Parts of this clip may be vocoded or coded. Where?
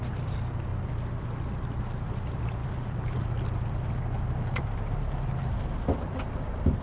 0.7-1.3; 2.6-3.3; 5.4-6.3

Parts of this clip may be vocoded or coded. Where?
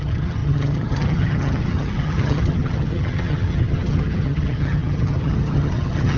0.0-6.2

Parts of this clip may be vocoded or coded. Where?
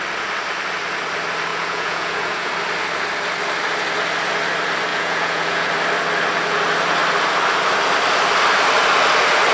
1.5-2.5; 4.9-5.7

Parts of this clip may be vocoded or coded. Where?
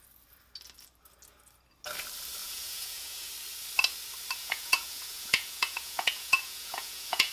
2.4-3.3; 4.4-7.3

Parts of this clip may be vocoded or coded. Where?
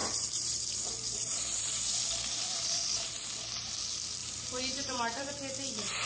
0.0-2.0; 2.5-3.1; 4.2-5.3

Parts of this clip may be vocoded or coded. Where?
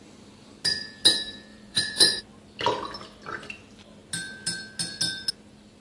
1.5-2.2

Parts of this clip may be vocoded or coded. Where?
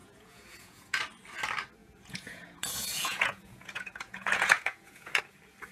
0.0-1.0; 1.8-5.2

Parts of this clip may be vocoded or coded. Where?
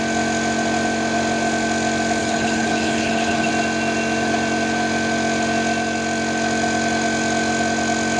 2.2-3.5